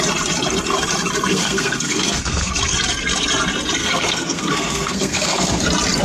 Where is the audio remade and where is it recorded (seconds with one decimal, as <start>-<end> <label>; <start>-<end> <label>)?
0.0-1.3 recorded; 1.3-2.5 remade; 2.5-3.8 recorded; 3.8-5.6 remade; 5.6-6.0 recorded